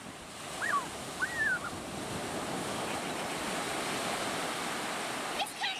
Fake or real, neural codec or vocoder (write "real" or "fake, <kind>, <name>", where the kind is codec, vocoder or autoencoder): fake, vocoder, BigVGAN v2